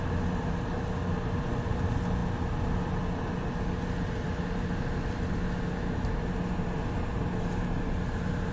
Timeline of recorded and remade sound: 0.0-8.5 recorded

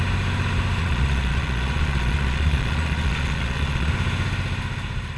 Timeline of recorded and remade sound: 0.0-0.8 recorded; 0.8-3.9 remade; 3.9-5.2 recorded

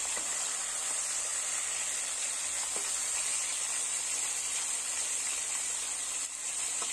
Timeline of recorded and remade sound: 0.0-6.9 recorded

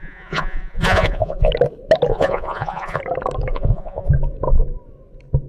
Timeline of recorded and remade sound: 0.0-1.5 remade; 1.5-2.1 recorded; 2.1-3.0 remade; 3.0-3.5 recorded; 3.5-4.1 remade; 4.1-5.5 recorded

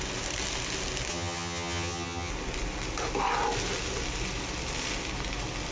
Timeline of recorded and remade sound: 0.0-1.1 recorded; 1.1-2.3 remade; 2.3-5.7 recorded